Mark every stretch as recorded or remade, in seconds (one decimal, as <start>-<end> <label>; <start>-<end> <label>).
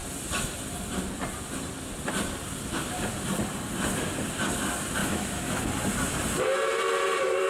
0.0-5.0 recorded; 5.0-5.6 remade; 5.6-7.5 recorded